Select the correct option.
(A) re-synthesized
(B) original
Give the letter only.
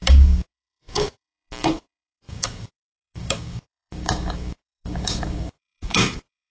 A